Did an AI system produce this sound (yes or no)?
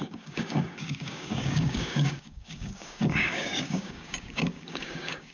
yes